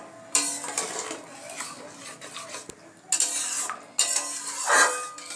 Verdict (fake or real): real